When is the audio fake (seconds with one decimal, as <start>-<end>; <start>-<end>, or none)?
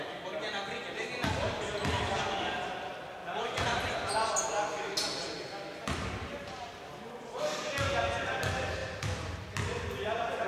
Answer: 8.8-9.5